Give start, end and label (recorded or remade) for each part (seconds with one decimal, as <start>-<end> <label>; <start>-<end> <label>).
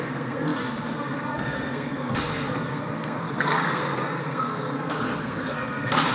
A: 0.0-6.1 remade